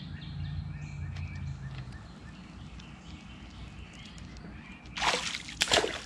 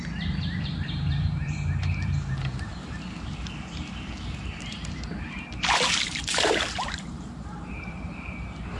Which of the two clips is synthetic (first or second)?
second